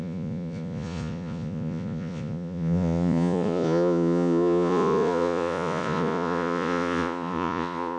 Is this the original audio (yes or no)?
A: no